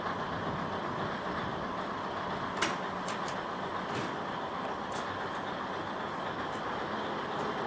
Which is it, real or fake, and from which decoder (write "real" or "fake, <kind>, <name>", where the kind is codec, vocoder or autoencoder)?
real